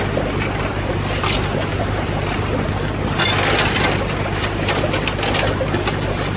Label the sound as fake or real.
real